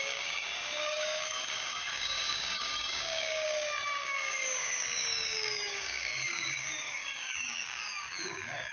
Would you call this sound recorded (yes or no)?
no